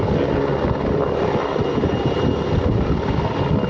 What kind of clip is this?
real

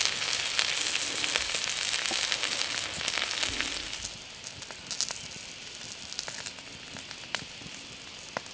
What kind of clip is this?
real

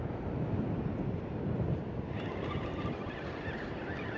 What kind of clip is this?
real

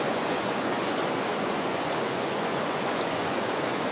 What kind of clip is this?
fake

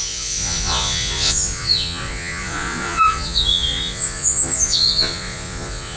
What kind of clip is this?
fake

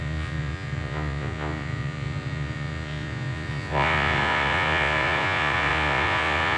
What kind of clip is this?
fake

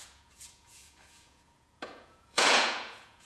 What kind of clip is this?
fake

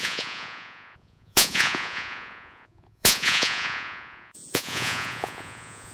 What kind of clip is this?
fake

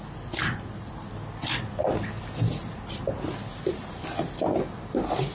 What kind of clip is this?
real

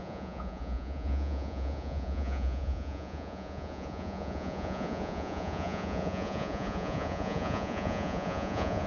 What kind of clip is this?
fake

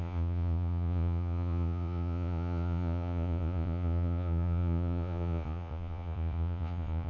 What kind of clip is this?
fake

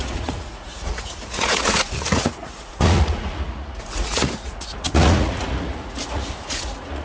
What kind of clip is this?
fake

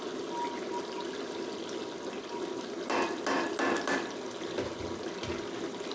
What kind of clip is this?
real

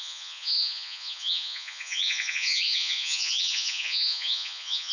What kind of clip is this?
fake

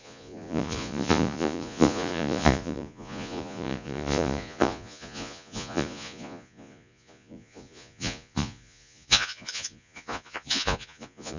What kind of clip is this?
fake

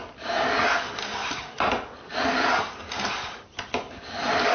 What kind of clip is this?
real